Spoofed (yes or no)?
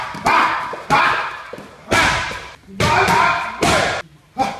no